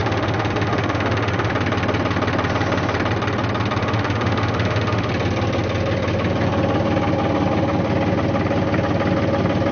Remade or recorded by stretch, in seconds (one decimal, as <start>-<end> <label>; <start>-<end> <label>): 0.0-1.5 remade; 1.5-3.8 recorded; 3.8-5.1 remade; 5.1-9.7 recorded